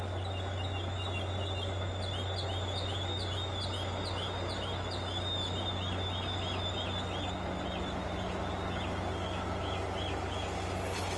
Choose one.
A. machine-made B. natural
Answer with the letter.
B